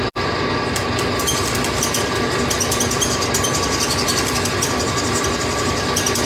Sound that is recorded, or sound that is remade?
recorded